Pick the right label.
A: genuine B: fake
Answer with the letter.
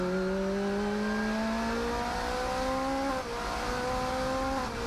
A